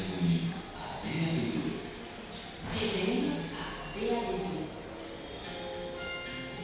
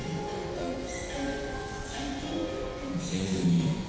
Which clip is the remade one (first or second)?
second